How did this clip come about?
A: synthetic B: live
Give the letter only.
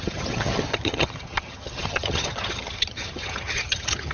A